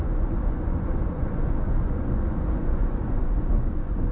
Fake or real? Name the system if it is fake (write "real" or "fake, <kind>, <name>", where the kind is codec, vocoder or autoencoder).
fake, vocoder, Vocos